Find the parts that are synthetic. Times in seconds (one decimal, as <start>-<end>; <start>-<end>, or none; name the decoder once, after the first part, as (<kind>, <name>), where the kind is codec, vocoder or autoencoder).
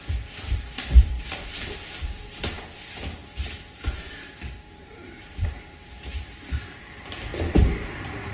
0.0-8.3 (vocoder, BigVGAN v2)